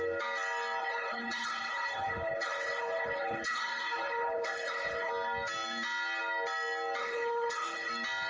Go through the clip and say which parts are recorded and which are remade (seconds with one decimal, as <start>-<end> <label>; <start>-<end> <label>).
0.0-0.8 recorded; 0.8-5.1 remade; 5.1-7.0 recorded; 7.0-7.9 remade; 7.9-8.3 recorded